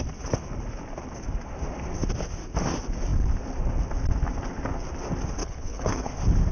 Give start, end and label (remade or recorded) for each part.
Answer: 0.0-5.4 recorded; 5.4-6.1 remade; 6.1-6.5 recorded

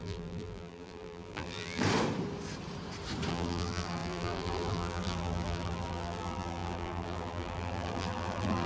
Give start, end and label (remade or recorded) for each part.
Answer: 0.0-1.8 remade; 1.8-3.3 recorded; 3.3-8.7 remade

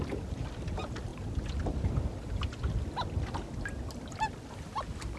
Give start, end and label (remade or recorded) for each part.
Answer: 0.0-5.2 recorded

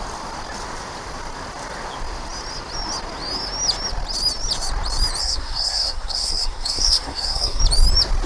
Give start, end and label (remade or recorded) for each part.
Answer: 0.0-5.2 recorded; 5.2-7.6 remade; 7.6-8.3 recorded